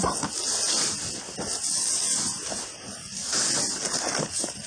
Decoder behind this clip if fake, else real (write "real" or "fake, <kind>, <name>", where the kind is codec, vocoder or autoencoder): real